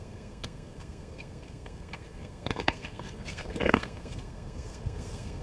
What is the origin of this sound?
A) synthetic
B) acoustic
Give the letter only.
A